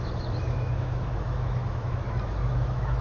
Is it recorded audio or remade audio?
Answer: remade